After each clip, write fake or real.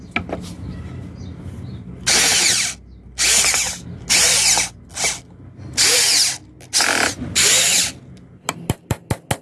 real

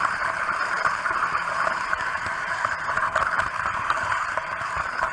fake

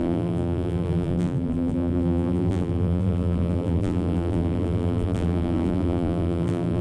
fake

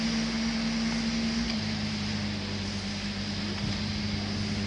real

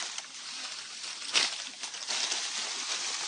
real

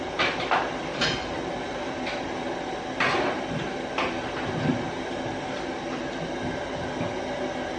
real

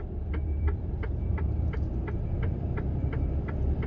fake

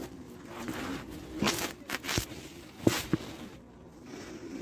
fake